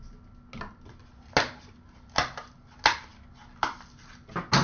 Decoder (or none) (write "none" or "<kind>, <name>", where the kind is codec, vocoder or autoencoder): none